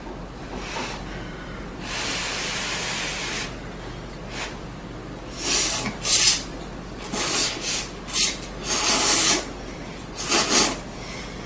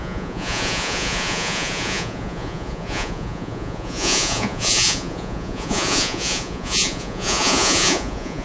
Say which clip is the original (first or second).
first